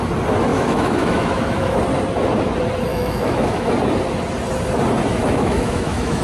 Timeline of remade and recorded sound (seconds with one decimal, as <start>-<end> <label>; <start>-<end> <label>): 0.0-0.5 recorded; 0.5-1.8 remade; 1.8-2.9 recorded; 2.9-3.7 remade; 3.7-5.1 recorded; 5.1-6.2 remade